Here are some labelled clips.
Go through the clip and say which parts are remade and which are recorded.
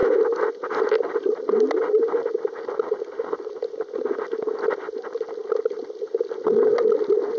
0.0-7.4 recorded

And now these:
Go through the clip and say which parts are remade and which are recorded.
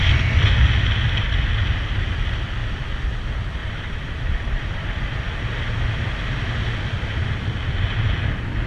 0.0-3.6 recorded; 3.6-4.9 remade; 4.9-8.7 recorded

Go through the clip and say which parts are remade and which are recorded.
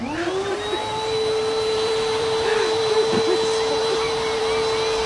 0.0-0.8 recorded; 0.8-3.2 remade; 3.2-3.8 recorded; 3.8-4.4 remade; 4.4-5.1 recorded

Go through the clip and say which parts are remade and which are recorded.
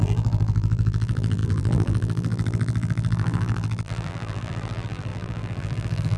0.0-6.2 remade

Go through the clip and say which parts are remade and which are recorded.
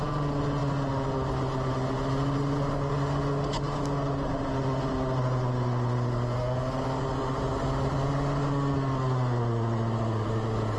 0.0-10.8 recorded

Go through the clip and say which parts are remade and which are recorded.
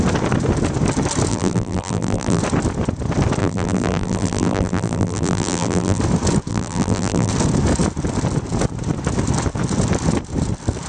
0.0-1.3 recorded; 1.3-2.4 remade; 2.4-3.4 recorded; 3.4-6.0 remade; 6.0-6.5 recorded; 6.5-7.3 remade; 7.3-10.9 recorded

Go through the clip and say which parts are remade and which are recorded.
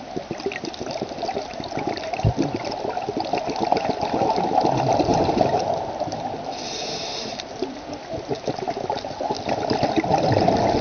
0.0-5.1 recorded; 5.1-5.9 remade; 5.9-10.8 recorded